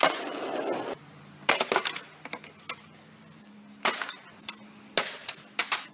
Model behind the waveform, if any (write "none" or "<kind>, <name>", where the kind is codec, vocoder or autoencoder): none